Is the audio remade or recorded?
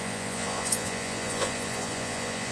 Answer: remade